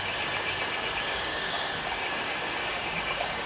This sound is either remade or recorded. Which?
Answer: remade